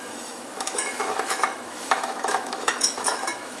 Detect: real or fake fake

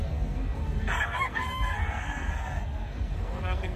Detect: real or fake fake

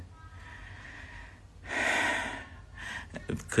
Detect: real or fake real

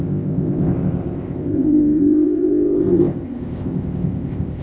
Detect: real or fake fake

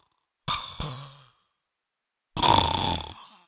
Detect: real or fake real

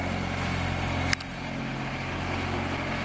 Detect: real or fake real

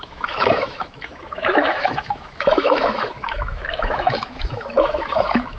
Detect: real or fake fake